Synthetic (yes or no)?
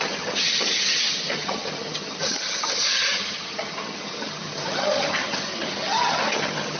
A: yes